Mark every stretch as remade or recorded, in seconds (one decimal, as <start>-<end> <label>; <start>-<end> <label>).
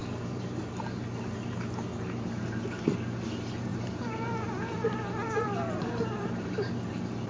0.0-0.6 remade; 0.6-1.9 recorded; 1.9-2.6 remade; 2.6-3.7 recorded; 3.7-6.7 remade; 6.7-7.3 recorded